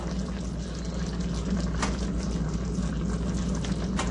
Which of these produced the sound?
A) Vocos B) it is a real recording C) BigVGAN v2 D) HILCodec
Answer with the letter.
B